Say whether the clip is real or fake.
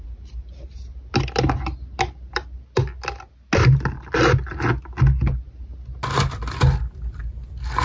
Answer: real